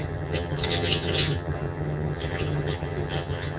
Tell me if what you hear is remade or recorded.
remade